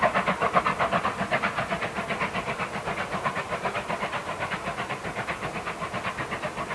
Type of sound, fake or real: real